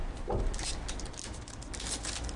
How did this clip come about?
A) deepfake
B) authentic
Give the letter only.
B